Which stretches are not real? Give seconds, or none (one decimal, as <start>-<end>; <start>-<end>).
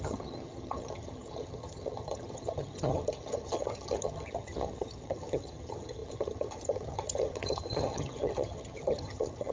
0.0-9.5